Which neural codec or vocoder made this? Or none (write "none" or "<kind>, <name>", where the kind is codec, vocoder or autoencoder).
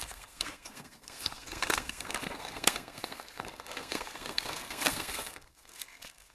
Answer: codec, SNAC